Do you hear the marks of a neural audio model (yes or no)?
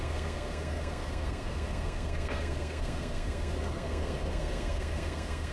yes